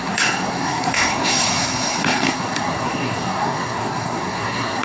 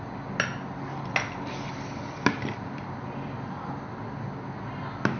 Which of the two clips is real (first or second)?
second